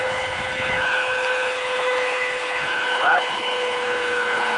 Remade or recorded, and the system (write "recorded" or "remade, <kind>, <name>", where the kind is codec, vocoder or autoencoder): remade, codec, HILCodec